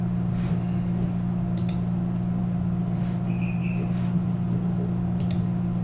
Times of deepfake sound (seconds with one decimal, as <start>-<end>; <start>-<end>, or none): none